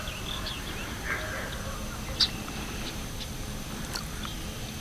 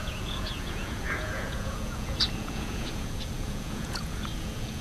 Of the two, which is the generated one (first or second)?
second